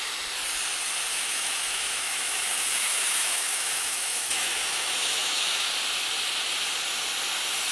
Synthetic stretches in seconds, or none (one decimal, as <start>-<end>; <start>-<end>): 1.1-5.7